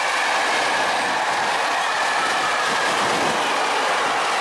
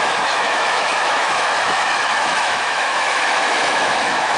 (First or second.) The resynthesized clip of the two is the second